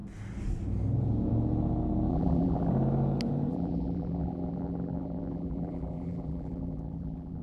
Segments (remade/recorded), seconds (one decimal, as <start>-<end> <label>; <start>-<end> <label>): 0.0-2.1 recorded; 2.1-2.7 remade; 2.7-3.5 recorded; 3.5-7.4 remade